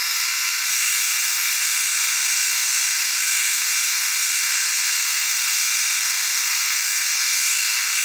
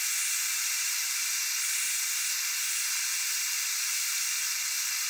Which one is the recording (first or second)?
second